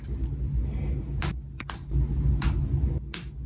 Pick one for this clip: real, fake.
real